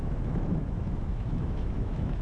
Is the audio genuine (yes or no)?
no